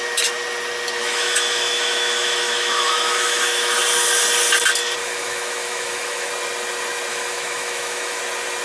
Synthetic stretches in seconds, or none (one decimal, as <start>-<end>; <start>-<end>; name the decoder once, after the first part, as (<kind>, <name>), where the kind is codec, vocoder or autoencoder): 1.0-3.8 (autoencoder, DAC-VAE); 5.0-6.3; 7.1-8.2